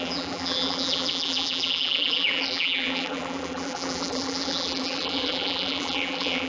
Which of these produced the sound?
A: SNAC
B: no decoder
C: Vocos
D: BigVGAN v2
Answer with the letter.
D